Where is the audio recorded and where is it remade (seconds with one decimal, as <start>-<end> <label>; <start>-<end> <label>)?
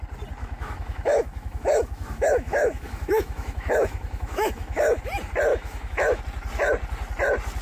0.0-0.4 recorded; 0.4-5.0 remade; 5.0-5.5 recorded; 5.5-6.2 remade; 6.2-7.6 recorded